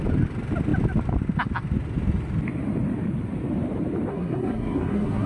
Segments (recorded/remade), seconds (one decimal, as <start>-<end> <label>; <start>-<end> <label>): 0.0-4.1 recorded; 4.1-5.3 remade